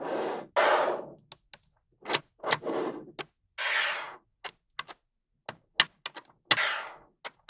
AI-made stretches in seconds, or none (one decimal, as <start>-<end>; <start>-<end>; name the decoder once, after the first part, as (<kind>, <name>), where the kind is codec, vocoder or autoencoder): none